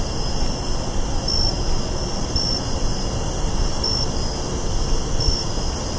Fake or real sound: real